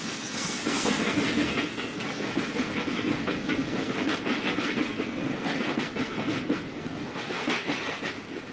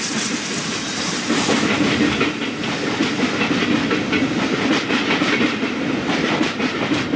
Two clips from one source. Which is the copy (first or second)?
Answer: first